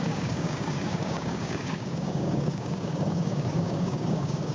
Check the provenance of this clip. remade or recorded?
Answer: remade